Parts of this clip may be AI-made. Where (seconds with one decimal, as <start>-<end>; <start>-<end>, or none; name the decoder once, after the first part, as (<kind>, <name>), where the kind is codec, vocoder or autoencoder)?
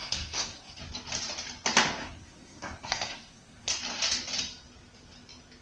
0.0-0.8 (codec, SNAC); 2.0-3.7